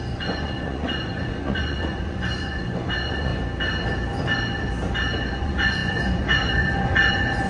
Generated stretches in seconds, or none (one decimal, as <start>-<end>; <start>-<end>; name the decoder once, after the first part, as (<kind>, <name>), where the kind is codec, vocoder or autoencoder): 0.0-3.3 (vocoder, Vocos); 5.3-7.5